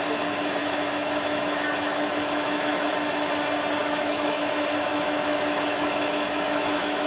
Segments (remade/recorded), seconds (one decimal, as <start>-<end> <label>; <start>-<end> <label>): 0.0-0.6 recorded; 0.6-2.9 remade; 2.9-3.8 recorded; 3.8-4.5 remade; 4.5-4.9 recorded; 4.9-7.1 remade